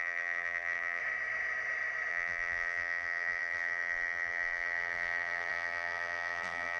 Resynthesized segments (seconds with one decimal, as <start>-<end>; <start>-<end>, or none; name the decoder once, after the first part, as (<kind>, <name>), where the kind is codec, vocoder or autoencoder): 0.0-1.0 (vocoder, BigVGAN v2); 2.1-6.8

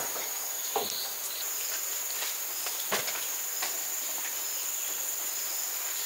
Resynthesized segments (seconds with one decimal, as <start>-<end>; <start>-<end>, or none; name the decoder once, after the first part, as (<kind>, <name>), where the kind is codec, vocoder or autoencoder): 5.4-6.1 (vocoder, BigVGAN v2)

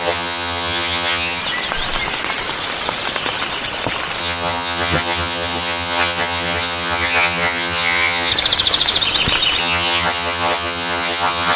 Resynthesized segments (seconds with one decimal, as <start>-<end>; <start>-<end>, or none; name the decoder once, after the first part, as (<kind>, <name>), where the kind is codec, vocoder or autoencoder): 0.0-1.4 (vocoder, HiFi-GAN); 4.2-8.3; 9.6-11.6

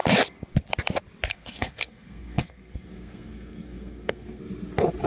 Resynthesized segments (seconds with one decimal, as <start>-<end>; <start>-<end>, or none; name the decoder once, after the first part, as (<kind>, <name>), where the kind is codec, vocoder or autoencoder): 1.3-4.4 (codec, SNAC)

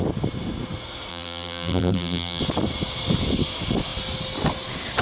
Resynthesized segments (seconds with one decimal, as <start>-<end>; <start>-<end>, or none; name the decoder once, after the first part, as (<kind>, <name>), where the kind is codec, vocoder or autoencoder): 1.1-2.4 (vocoder, BigVGAN v2)

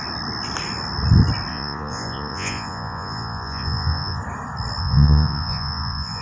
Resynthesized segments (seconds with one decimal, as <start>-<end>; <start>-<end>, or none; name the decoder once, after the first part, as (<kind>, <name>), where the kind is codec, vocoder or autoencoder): 1.5-4.2 (vocoder, Vocos); 4.8-6.2

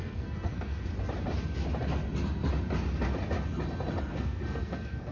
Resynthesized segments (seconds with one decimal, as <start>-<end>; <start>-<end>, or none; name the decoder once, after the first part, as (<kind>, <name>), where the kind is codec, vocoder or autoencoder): 0.0-0.9 (codec, SNAC); 4.0-5.1

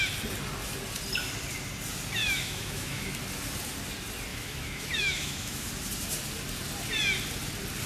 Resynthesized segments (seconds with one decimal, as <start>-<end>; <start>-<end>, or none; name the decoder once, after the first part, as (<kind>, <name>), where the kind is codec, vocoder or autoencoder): 2.2-3.2 (autoencoder, DAC-VAE); 4.3-5.7